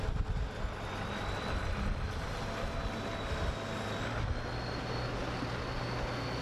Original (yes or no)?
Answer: yes